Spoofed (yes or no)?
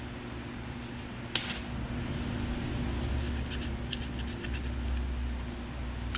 no